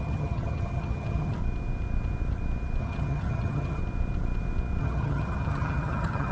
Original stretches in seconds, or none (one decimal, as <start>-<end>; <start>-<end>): 1.4-2.8; 3.8-4.8